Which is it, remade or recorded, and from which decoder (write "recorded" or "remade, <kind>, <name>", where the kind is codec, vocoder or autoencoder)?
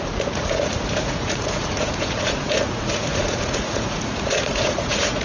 remade, vocoder, Vocos